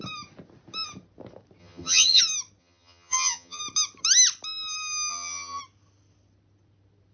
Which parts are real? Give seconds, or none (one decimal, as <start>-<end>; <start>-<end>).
0.0-1.6; 2.2-2.6; 3.6-5.1; 5.6-7.1